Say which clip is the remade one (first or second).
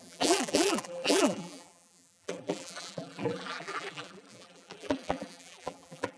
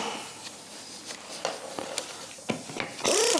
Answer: first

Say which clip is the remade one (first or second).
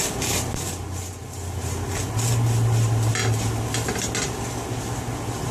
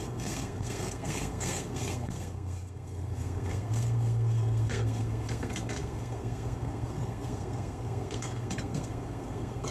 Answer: second